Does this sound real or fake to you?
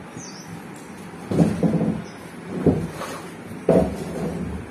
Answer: real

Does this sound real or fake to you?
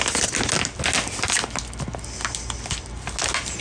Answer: real